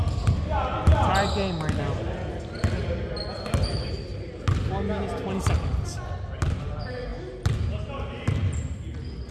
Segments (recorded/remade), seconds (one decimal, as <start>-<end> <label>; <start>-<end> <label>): 0.0-9.3 recorded